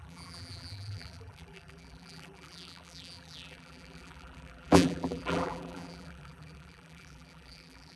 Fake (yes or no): yes